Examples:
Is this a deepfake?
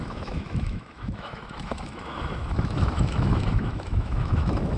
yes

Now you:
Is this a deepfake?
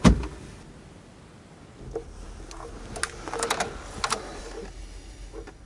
no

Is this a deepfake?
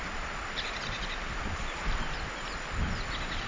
no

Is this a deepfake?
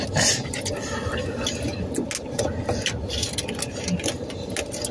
no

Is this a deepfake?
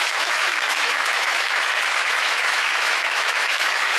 yes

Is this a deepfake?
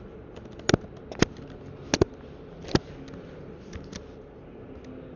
no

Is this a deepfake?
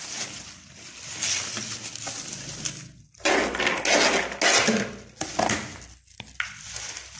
no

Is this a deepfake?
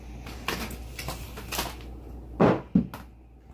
no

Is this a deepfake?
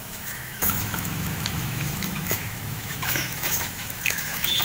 yes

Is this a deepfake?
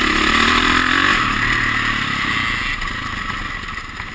no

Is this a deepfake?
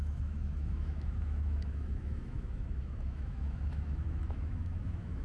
yes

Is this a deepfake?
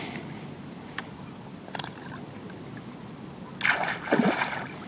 no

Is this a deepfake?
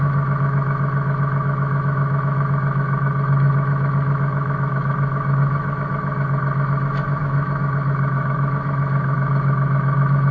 yes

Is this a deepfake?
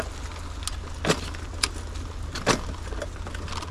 no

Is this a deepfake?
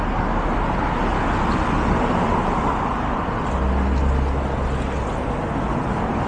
no